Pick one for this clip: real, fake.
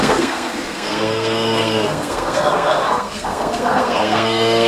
fake